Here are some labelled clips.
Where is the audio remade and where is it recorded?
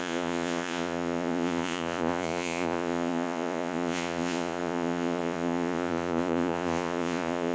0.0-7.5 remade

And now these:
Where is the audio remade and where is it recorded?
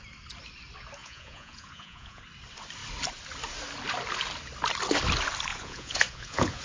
0.0-1.0 recorded; 1.0-2.2 remade; 2.2-5.5 recorded; 5.5-6.6 remade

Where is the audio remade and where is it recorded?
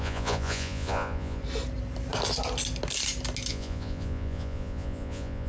0.0-1.4 remade; 1.4-3.5 recorded; 3.5-5.5 remade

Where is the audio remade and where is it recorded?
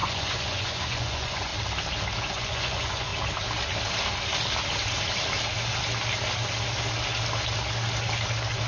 0.0-1.5 remade; 1.5-2.2 recorded; 2.2-3.1 remade; 3.1-8.7 recorded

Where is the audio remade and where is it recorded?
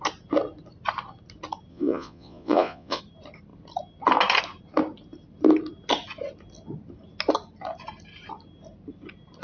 0.0-1.7 recorded; 1.7-3.0 remade; 3.0-9.4 recorded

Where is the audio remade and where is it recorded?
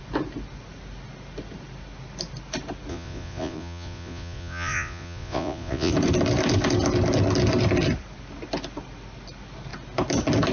0.0-2.9 recorded; 2.9-5.9 remade; 5.9-10.5 recorded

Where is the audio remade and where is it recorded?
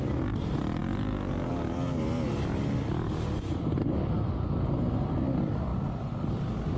0.0-6.8 recorded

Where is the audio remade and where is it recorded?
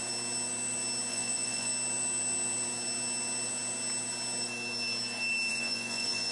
0.0-1.1 recorded; 1.1-1.7 remade; 1.7-5.5 recorded; 5.5-6.3 remade